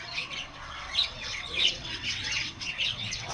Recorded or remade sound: remade